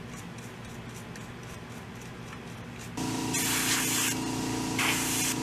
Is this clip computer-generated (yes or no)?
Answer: no